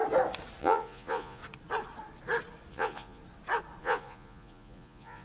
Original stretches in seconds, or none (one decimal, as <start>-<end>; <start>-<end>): 0.0-0.6; 1.4-2.7; 3.2-3.8